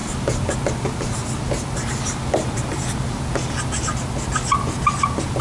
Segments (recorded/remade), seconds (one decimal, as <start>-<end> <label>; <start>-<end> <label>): 0.0-5.4 recorded